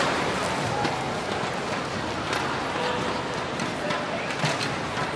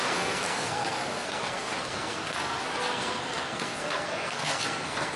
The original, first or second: first